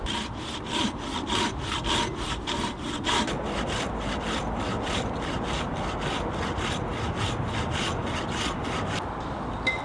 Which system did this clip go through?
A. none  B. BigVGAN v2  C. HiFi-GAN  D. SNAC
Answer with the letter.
A